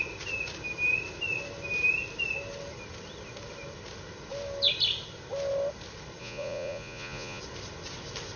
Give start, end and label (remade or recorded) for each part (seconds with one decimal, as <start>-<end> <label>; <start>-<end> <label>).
0.0-6.2 recorded; 6.2-7.4 remade; 7.4-8.4 recorded